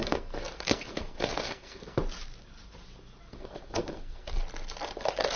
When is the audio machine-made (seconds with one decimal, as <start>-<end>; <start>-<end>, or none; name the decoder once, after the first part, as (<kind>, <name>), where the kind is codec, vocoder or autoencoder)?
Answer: 0.0-2.0 (codec, SNAC); 3.3-4.4; 5.0-5.4